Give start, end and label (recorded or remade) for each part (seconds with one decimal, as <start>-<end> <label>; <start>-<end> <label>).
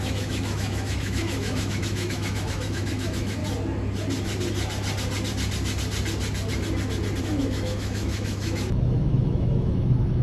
0.0-3.4 remade; 3.4-7.2 recorded; 7.2-10.2 remade